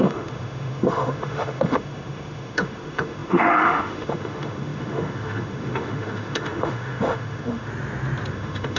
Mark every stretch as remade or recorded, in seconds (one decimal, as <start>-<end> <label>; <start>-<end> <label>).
0.0-7.7 remade; 7.7-8.3 recorded; 8.3-8.8 remade